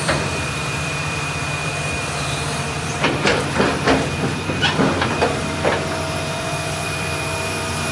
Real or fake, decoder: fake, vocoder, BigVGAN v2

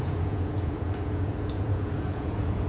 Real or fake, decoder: fake, vocoder, Vocos